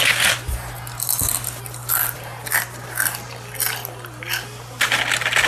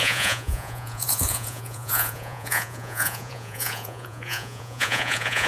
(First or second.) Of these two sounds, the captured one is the first